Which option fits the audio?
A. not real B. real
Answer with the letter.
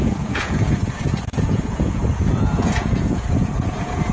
A